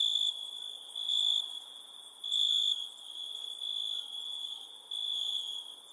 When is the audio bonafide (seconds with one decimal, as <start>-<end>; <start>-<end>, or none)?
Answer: 0.0-5.9